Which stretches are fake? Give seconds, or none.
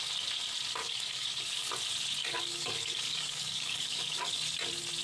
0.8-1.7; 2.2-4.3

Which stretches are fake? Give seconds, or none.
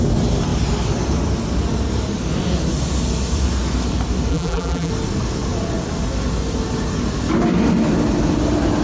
4.3-4.9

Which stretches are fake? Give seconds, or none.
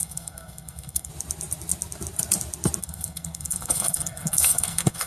0.0-1.1; 2.8-5.1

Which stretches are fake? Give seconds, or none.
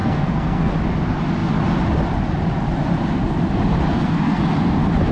0.0-0.7; 3.9-4.4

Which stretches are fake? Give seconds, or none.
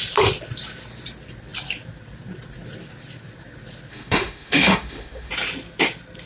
3.9-5.3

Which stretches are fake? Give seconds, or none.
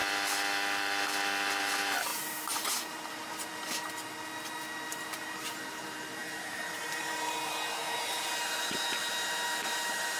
1.6-3.5; 4.9-10.2